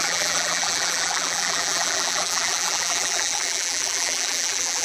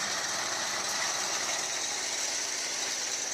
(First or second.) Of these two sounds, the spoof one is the first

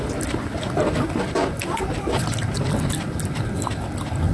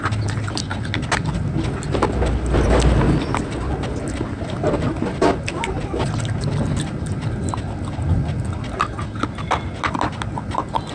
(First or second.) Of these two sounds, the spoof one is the first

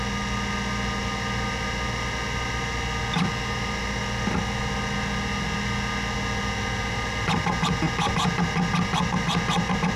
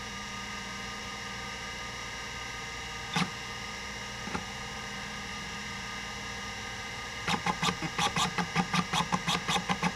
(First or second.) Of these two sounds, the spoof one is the second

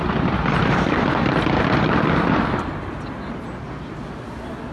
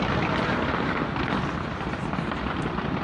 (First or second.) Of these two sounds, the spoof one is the second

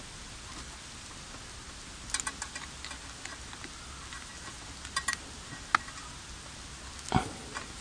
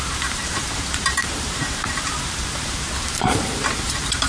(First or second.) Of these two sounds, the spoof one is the second